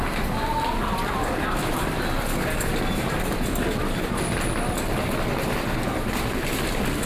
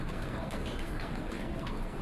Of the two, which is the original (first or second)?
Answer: first